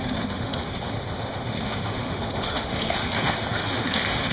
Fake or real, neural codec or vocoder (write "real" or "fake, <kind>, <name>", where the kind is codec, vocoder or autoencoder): fake, autoencoder, DAC-VAE